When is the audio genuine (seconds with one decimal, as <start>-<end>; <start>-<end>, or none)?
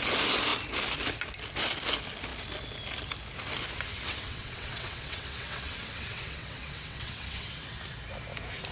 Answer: 0.0-3.9; 7.8-8.7